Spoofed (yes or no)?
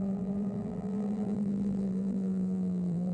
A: yes